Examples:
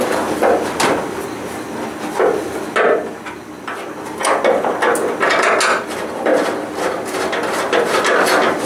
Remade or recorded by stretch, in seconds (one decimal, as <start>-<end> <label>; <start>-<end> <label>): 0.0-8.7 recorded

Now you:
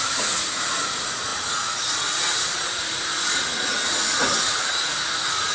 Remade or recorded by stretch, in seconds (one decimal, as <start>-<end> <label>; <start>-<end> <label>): 0.0-5.5 remade

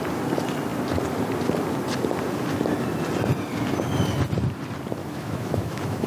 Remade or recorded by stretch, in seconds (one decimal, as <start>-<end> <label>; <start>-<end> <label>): 0.0-5.0 recorded; 5.0-6.1 remade

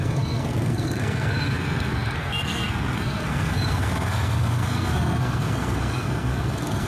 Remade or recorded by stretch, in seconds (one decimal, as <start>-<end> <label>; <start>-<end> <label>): 0.0-6.9 remade

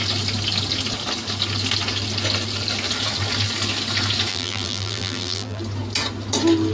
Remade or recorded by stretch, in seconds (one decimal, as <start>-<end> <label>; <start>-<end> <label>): 0.0-4.3 recorded; 4.3-5.6 remade; 5.6-6.7 recorded

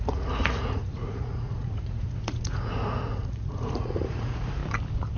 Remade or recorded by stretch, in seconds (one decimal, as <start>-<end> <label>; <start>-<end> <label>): 0.0-4.6 remade; 4.6-5.2 recorded

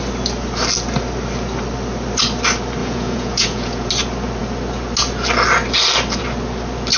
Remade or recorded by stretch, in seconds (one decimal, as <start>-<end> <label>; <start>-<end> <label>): 0.0-2.8 recorded; 2.8-3.9 remade; 3.9-7.0 recorded

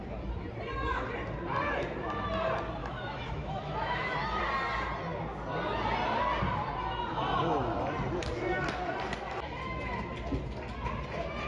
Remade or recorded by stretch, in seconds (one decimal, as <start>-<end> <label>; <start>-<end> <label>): 0.0-2.8 recorded; 2.8-4.4 remade; 4.4-11.5 recorded